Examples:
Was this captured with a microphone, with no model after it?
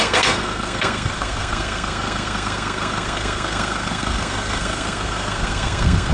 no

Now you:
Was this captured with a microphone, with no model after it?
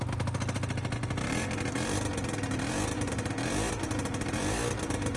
yes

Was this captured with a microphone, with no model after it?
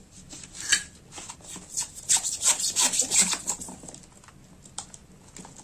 yes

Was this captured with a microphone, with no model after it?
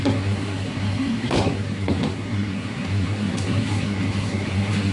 no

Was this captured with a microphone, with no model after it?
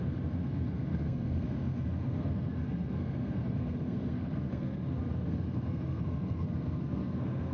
no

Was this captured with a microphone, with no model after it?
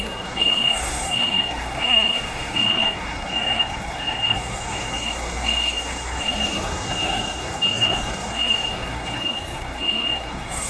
no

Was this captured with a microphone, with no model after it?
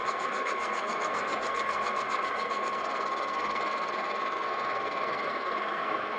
no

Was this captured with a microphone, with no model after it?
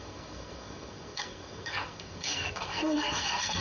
no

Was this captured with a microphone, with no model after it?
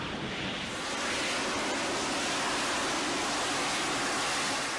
yes